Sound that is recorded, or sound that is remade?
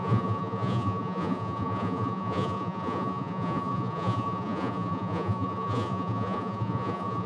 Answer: remade